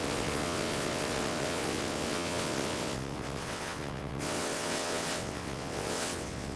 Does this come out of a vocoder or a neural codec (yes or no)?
yes